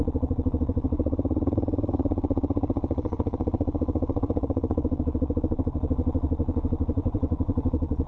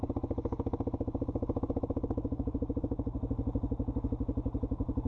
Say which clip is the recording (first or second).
second